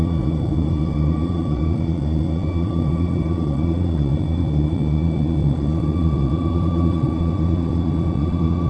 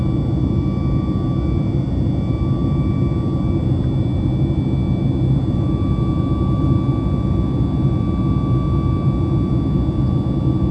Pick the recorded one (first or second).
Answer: second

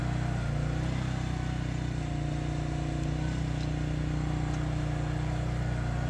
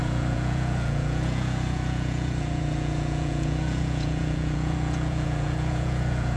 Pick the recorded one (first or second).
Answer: first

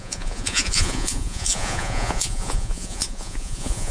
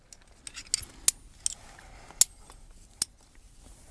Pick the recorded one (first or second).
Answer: second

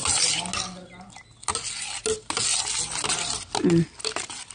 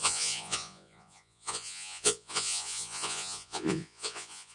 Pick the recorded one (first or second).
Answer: first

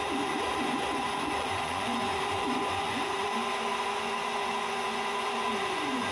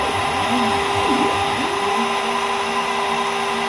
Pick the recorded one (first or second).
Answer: second